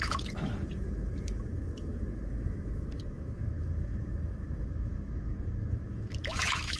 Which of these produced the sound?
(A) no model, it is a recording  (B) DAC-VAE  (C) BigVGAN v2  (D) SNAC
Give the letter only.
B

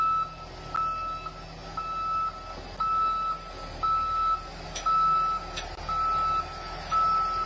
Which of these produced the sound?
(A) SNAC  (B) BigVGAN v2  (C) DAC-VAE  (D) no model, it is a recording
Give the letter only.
D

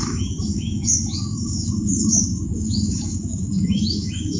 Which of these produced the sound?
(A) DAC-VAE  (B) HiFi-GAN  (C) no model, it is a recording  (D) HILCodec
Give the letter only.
A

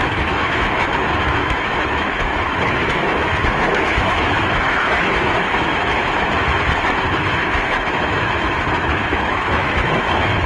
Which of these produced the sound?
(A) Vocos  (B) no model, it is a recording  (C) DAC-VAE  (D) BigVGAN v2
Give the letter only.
C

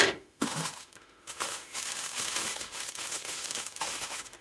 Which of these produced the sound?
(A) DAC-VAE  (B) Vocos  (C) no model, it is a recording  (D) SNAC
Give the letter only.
A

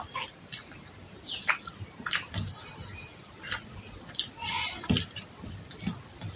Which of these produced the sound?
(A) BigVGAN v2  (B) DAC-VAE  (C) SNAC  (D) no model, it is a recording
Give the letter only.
D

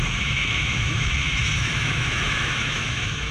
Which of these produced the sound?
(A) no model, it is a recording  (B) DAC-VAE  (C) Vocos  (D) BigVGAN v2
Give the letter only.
B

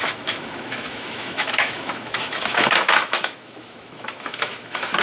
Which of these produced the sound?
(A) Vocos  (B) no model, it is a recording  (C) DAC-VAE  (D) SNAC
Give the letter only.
C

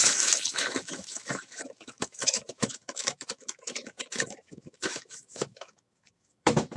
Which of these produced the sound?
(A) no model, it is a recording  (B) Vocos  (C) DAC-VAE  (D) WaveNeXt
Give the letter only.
C